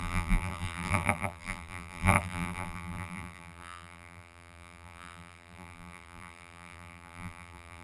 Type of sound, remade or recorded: remade